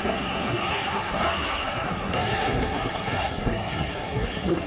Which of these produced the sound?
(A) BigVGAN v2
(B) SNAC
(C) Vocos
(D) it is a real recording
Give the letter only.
B